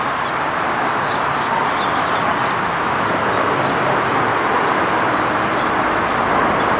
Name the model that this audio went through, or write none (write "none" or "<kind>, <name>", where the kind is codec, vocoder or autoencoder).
none